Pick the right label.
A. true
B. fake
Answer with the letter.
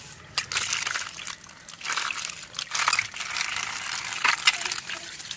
A